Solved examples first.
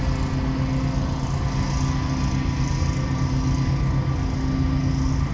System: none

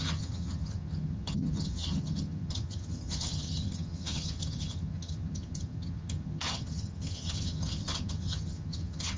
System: vocoder, HiFi-GAN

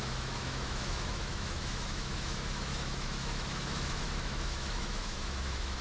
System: autoencoder, DAC-VAE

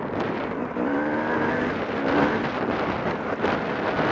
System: none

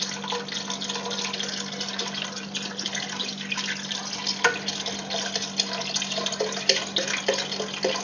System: none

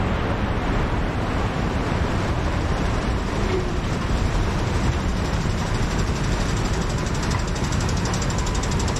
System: vocoder, BigVGAN v2